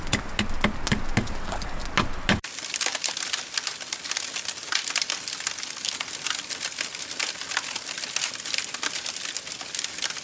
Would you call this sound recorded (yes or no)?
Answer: yes